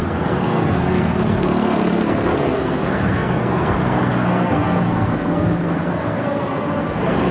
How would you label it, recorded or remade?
remade